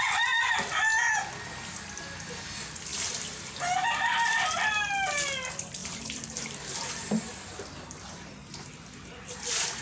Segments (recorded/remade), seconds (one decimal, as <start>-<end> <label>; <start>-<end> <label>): 0.0-2.9 recorded; 2.9-3.5 remade; 3.5-5.8 recorded; 5.8-7.1 remade; 7.1-9.8 recorded